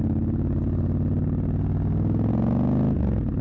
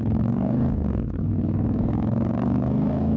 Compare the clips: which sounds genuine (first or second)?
first